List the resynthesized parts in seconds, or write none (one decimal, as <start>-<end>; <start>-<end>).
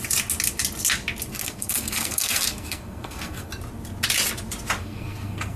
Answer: 1.3-3.5; 4.8-5.6